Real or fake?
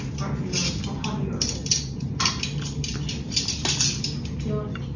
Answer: real